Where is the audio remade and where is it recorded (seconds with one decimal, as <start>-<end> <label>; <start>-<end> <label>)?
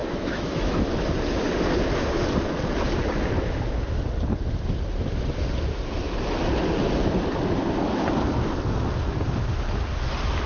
0.0-1.0 remade; 1.0-10.5 recorded